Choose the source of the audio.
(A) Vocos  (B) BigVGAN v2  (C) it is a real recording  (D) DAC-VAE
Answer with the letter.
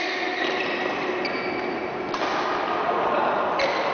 C